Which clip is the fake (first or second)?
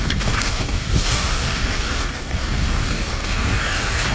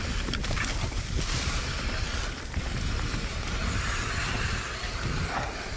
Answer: first